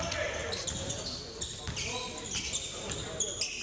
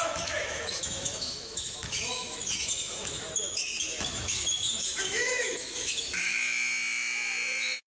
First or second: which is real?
first